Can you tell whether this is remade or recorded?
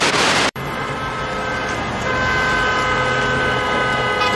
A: remade